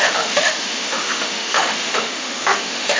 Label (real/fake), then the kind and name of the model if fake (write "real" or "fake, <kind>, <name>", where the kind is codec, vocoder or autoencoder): fake, autoencoder, DAC-VAE